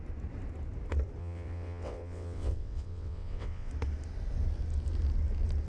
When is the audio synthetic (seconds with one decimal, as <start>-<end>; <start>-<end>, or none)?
1.2-3.7